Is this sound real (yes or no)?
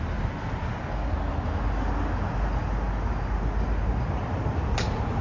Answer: yes